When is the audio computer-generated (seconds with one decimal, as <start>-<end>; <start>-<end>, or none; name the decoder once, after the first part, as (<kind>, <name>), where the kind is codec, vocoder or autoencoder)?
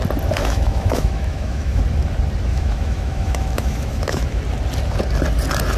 0.4-1.8 (autoencoder, DAC-VAE); 2.5-4.4